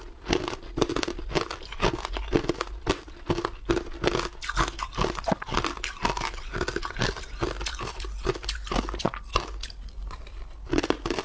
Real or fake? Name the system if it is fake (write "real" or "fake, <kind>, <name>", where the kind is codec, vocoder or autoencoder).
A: real